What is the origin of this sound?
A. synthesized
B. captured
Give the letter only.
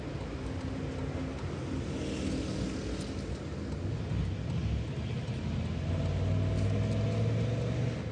B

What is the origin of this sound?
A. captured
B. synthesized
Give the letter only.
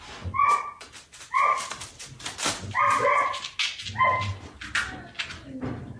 A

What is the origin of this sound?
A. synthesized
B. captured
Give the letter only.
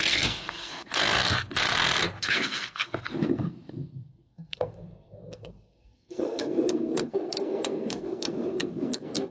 A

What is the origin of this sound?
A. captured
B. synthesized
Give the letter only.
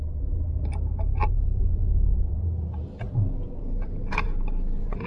B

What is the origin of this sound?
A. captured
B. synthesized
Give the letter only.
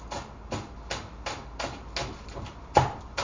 A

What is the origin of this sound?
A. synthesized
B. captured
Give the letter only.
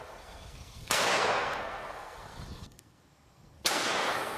A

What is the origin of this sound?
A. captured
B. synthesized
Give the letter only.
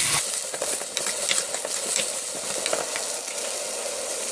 A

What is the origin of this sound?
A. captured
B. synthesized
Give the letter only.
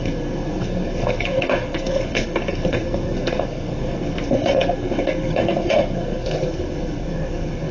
B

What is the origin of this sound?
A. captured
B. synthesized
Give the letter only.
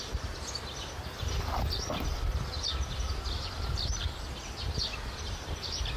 A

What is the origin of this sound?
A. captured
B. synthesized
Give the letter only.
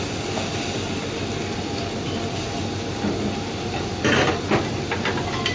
A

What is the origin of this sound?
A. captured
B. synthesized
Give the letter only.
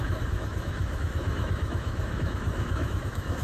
B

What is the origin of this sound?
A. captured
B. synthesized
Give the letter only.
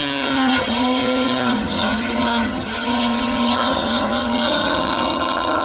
B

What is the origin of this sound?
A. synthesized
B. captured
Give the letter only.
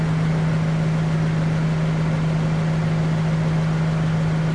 B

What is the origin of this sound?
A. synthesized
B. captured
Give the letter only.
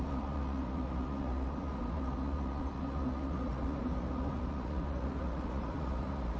A